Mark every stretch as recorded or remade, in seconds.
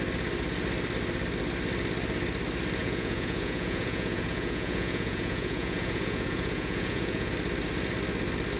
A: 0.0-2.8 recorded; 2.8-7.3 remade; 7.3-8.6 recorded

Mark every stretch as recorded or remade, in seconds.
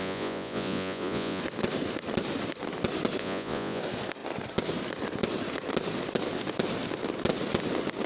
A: 0.0-1.4 remade; 1.4-3.2 recorded; 3.2-3.8 remade; 3.8-8.1 recorded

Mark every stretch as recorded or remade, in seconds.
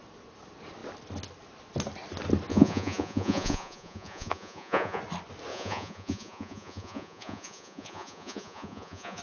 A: 0.0-2.5 recorded; 2.5-5.0 remade; 5.0-5.5 recorded; 5.5-9.2 remade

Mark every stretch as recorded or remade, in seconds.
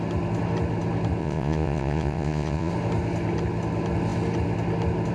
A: 0.0-1.2 recorded; 1.2-2.7 remade; 2.7-5.1 recorded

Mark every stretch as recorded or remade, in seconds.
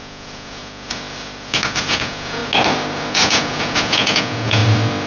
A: 0.0-0.6 remade; 0.6-1.8 recorded; 1.8-2.4 remade; 2.4-3.1 recorded; 3.1-4.6 remade; 4.6-5.1 recorded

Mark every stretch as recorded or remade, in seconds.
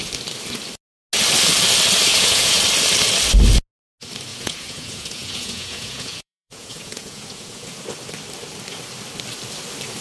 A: 0.0-2.1 recorded; 2.1-2.6 remade; 2.6-4.3 recorded; 4.3-7.8 remade; 7.8-10.0 recorded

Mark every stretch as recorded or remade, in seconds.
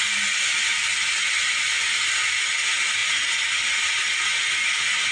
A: 0.0-5.1 recorded